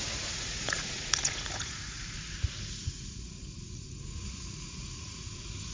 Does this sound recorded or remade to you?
remade